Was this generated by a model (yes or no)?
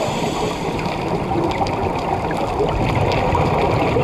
no